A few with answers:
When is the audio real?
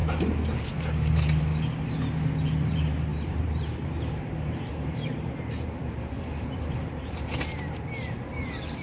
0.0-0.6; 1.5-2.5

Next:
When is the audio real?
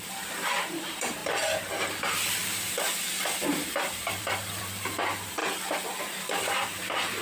1.2-1.8; 2.4-3.5; 5.4-6.0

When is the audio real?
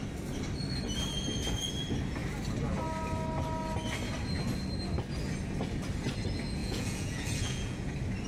0.0-6.6; 7.9-8.3